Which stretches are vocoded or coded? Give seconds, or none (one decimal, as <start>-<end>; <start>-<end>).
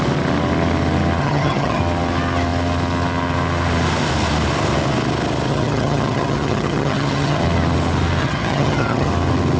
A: 1.2-1.8; 5.5-7.4; 8.2-9.1